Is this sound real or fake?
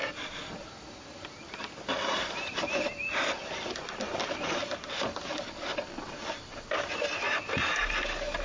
real